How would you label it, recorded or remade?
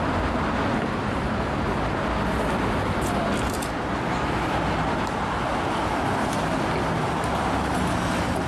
recorded